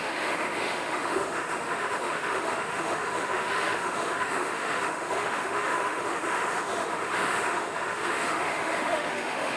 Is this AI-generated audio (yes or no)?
yes